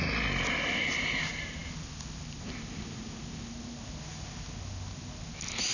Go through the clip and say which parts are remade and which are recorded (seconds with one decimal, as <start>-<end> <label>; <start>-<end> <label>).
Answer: 0.0-5.7 recorded